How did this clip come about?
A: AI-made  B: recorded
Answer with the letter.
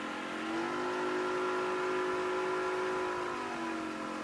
B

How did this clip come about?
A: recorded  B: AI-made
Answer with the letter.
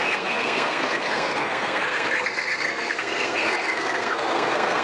B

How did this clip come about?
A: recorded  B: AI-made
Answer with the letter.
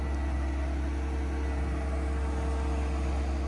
A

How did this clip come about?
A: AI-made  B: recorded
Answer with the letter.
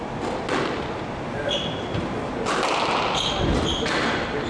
B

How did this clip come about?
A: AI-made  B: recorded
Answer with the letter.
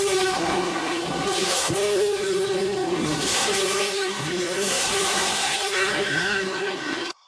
A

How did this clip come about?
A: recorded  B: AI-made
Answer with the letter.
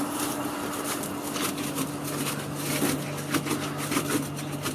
A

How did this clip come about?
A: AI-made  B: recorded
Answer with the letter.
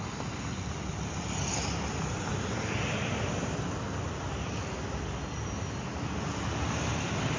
B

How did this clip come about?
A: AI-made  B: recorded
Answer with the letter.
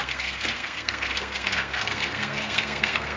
A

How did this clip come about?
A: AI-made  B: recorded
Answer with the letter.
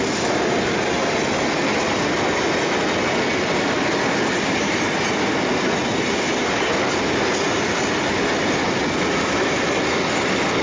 B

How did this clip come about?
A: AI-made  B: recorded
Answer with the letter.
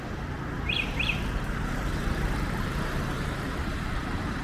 A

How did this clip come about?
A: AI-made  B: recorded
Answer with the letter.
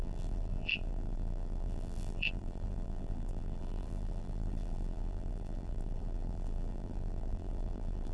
A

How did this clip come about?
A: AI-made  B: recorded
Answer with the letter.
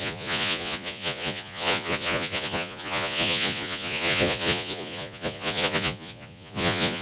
A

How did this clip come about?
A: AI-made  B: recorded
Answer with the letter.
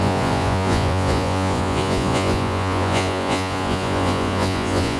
A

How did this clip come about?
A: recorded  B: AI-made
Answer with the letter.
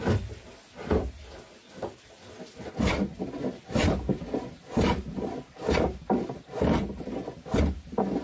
A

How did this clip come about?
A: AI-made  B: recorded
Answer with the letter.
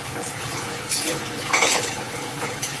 A